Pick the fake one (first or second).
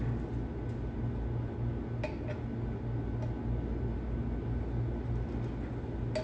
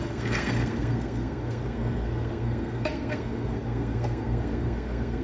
second